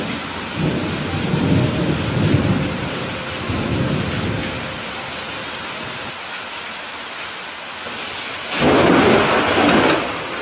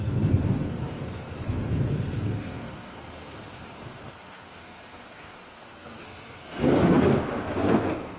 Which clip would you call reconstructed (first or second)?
second